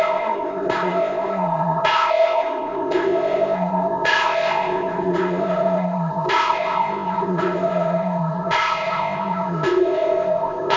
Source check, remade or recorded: remade